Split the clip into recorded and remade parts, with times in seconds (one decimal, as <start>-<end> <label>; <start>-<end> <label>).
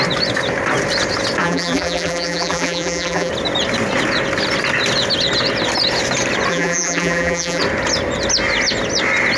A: 0.0-1.4 recorded; 1.4-3.3 remade; 3.3-6.5 recorded; 6.5-7.6 remade; 7.6-9.4 recorded